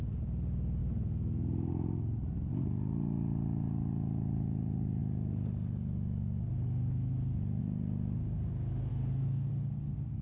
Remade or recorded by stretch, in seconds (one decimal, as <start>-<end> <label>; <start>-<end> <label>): 0.0-8.9 recorded; 8.9-9.5 remade; 9.5-10.2 recorded